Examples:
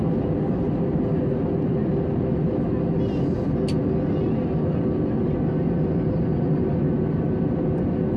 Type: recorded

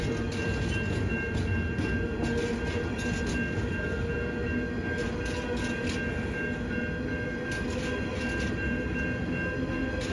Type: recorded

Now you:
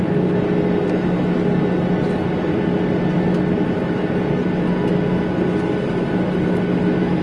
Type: recorded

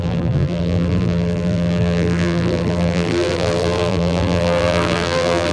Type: remade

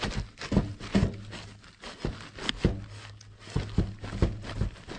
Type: recorded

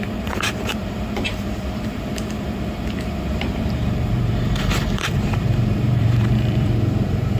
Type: remade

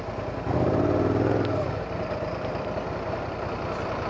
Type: recorded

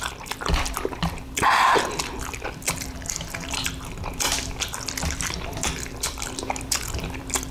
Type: remade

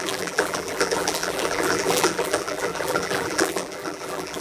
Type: remade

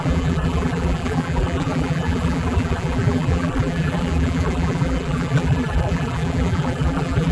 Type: remade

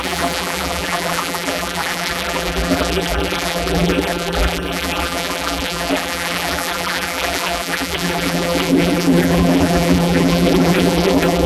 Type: remade